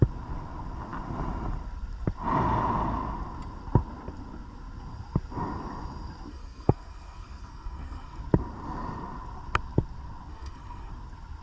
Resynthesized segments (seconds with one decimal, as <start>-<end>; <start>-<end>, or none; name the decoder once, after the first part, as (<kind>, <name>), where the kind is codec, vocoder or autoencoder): 6.3-8.2 (codec, SNAC); 10.3-10.9